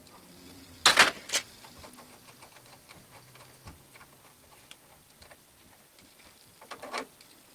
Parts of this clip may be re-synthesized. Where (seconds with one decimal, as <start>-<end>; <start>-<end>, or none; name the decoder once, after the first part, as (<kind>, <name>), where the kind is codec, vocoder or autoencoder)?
2.7-7.1 (vocoder, BigVGAN v2)